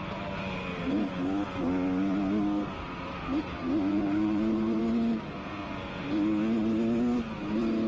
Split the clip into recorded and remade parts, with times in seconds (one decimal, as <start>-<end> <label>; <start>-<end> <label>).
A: 0.0-3.9 recorded; 3.9-4.8 remade; 4.8-7.9 recorded